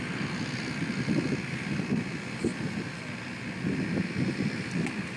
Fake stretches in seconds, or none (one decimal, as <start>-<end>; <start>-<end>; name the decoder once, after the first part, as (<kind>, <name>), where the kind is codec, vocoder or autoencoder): none